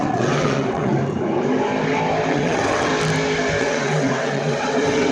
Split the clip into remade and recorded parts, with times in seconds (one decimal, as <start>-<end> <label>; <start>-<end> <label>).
0.0-0.9 remade; 0.9-2.3 recorded; 2.3-2.9 remade; 2.9-3.6 recorded; 3.6-5.1 remade